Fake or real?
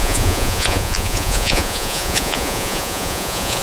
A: fake